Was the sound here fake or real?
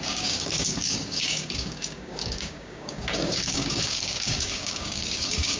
fake